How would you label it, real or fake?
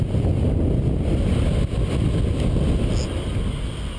real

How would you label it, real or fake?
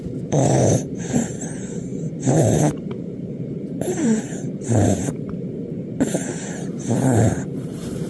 fake